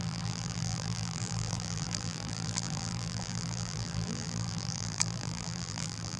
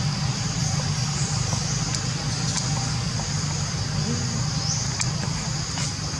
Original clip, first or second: second